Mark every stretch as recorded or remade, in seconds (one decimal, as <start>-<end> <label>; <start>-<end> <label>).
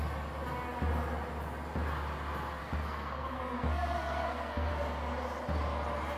0.0-2.6 recorded; 2.6-4.7 remade; 4.7-6.2 recorded